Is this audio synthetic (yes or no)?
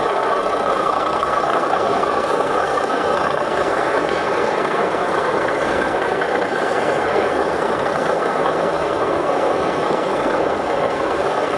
yes